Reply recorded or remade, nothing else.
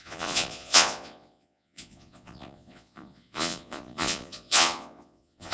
remade